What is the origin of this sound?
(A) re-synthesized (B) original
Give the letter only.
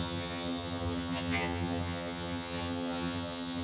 A